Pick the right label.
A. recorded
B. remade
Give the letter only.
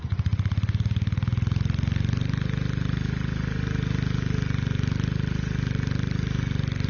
A